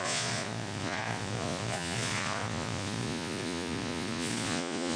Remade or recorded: remade